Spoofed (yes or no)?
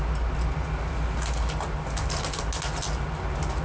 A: no